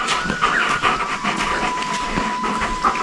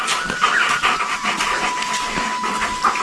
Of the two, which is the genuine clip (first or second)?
second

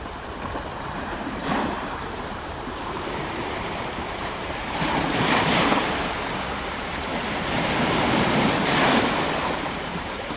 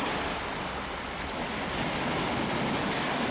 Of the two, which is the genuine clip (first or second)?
second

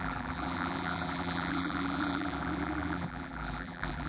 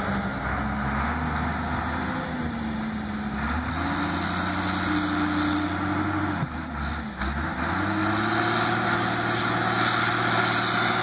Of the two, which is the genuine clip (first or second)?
second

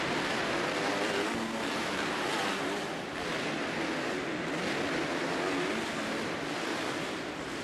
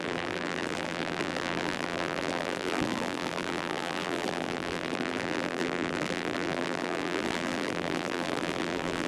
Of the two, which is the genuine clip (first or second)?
first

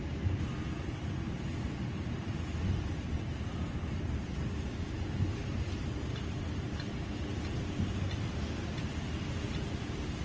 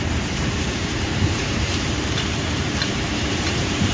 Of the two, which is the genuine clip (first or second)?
first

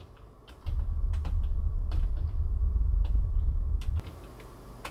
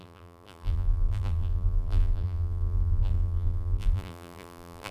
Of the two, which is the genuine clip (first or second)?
first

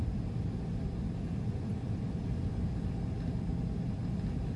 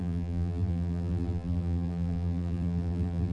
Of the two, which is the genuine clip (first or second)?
first